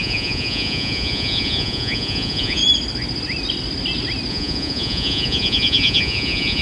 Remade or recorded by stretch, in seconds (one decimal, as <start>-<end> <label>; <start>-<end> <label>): 0.0-2.6 remade; 2.6-4.3 recorded; 4.3-6.6 remade